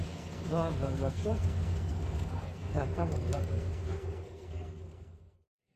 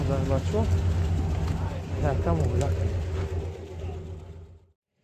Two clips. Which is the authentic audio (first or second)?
second